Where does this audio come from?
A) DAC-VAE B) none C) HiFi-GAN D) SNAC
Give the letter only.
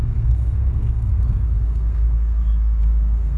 D